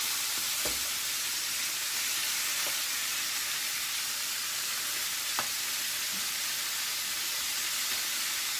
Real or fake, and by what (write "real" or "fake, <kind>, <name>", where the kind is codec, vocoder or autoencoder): real